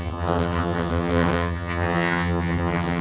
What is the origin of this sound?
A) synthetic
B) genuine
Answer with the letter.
A